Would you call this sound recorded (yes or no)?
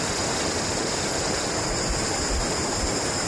yes